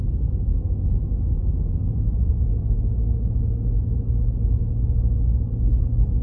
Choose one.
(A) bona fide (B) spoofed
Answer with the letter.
A